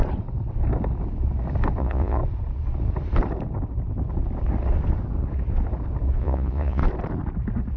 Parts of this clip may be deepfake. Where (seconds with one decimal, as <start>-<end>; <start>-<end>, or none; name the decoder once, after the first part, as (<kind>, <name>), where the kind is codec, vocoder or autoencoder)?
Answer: 1.8-2.2 (vocoder, Vocos); 6.2-6.8

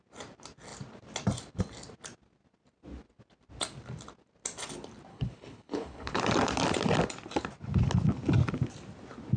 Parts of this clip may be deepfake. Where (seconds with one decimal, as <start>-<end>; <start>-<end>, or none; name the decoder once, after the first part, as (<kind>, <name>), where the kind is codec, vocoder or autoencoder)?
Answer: 5.1-6.2 (codec, HILCodec)

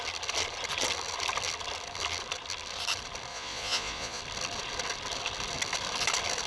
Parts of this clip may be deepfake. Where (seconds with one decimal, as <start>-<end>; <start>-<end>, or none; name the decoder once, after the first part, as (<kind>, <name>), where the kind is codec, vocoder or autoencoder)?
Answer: 3.3-4.2 (vocoder, Vocos)

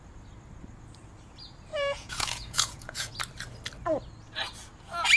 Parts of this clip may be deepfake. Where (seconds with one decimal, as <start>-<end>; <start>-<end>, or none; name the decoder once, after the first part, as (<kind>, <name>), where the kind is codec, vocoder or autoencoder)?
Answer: 1.7-3.1 (vocoder, Vocos)

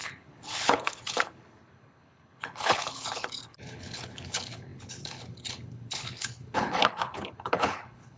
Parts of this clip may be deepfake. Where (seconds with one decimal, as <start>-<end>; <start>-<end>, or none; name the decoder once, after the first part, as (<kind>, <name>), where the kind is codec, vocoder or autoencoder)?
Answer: 0.0-8.2 (codec, HILCodec)

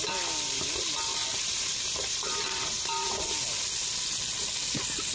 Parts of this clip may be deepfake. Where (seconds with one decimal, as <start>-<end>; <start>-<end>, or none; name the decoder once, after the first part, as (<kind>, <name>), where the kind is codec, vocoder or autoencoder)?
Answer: 1.2-3.2 (vocoder, BigVGAN v2)

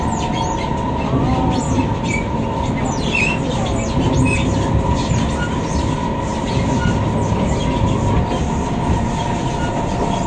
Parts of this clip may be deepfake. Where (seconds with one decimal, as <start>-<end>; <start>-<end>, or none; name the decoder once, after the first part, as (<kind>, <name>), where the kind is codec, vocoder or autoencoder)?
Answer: none